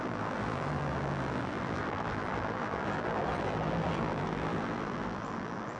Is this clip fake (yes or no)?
yes